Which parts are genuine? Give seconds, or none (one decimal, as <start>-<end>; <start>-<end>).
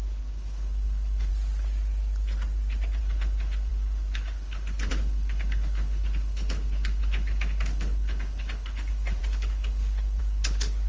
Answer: 1.3-3.0